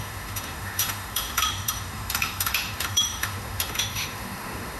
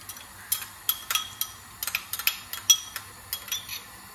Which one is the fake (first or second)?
first